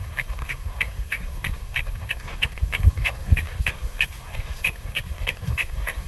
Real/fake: fake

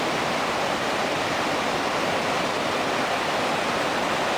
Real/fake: real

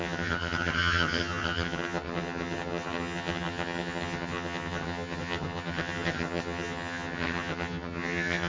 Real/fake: fake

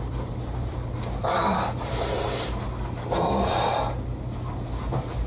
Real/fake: fake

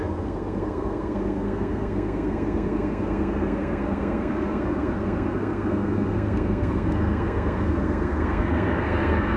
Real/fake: fake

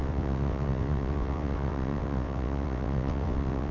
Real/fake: fake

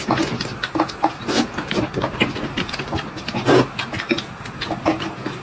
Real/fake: real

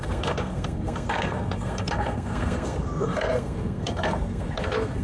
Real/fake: fake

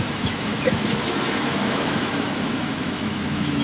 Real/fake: fake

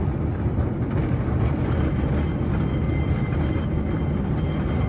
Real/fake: real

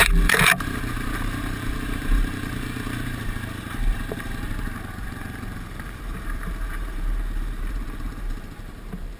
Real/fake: fake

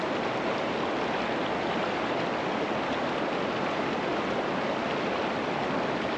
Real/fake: real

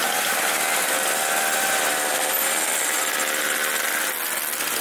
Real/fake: real